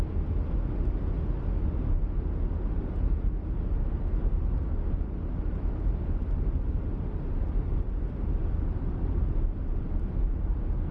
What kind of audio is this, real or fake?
real